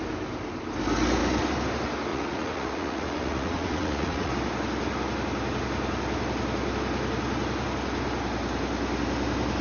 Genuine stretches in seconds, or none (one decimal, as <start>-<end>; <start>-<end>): 0.0-2.1; 4.3-9.6